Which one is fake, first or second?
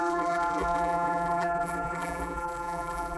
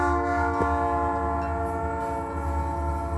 first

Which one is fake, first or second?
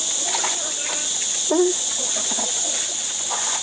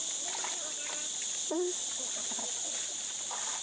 first